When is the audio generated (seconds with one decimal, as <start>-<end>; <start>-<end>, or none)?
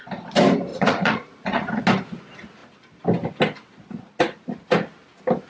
0.7-1.8